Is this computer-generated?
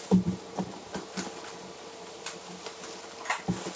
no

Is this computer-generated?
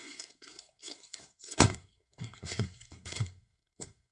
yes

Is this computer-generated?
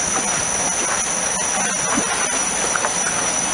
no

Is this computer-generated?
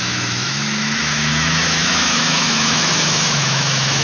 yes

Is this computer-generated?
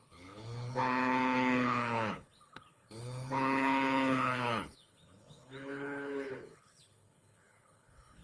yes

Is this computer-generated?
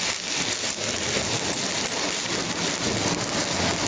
no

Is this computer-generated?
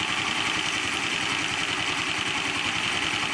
no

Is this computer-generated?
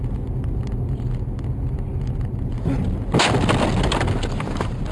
no